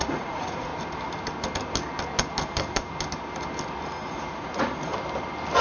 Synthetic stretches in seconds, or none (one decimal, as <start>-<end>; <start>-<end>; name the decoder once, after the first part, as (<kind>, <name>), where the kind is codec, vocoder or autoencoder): 0.0-0.7 (vocoder, Vocos); 4.1-4.9